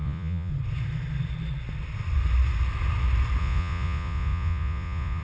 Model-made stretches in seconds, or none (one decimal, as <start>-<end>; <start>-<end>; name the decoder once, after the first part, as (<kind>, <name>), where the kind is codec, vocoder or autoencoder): 0.0-0.5 (vocoder, Vocos); 3.4-5.2